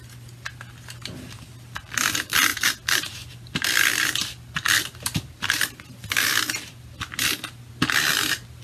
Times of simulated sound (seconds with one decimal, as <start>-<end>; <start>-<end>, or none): none